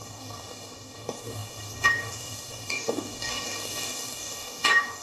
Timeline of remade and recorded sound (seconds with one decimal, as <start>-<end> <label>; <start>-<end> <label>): 0.0-5.0 remade